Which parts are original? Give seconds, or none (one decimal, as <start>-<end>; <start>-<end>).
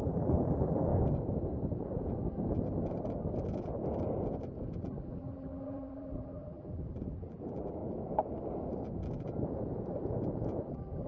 0.9-4.8; 7.8-10.7